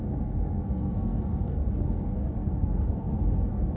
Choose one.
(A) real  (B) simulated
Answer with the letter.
B